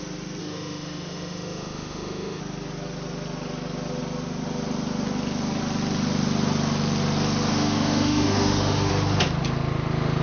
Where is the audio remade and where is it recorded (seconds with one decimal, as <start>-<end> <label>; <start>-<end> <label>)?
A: 0.0-0.4 recorded; 0.4-2.4 remade; 2.4-7.5 recorded; 7.5-8.9 remade; 8.9-10.2 recorded